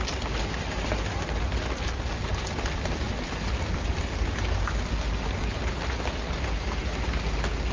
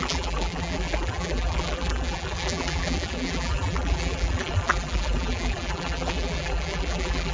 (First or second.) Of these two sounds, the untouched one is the first